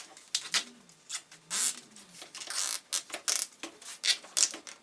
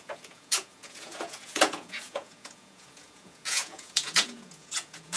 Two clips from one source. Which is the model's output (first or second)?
second